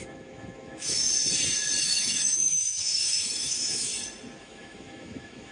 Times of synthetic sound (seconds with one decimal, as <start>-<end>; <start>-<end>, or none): 0.0-1.1; 1.8-3.9; 4.4-5.5